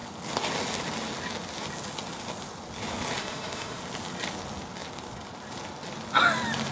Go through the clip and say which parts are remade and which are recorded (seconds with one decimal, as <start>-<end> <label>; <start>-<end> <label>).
0.0-3.2 recorded; 3.2-3.8 remade; 3.8-6.7 recorded